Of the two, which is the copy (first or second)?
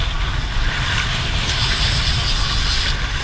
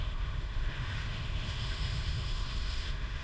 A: second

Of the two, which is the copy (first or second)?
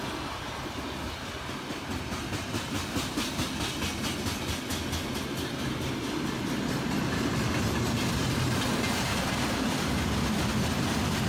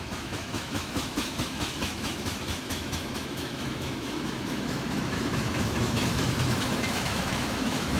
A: second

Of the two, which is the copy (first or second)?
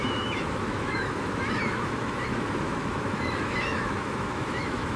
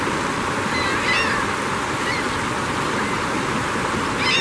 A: first